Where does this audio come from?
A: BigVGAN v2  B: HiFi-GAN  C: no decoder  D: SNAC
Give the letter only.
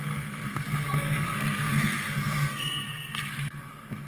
D